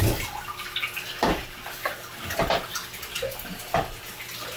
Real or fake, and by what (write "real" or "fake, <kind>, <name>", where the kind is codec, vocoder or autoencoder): real